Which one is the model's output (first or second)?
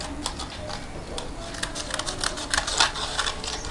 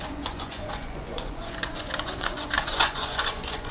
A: second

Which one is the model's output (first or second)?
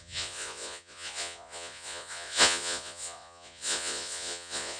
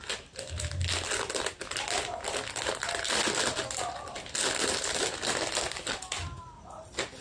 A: first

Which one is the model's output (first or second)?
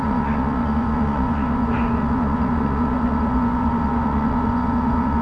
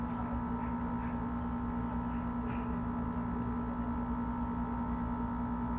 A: first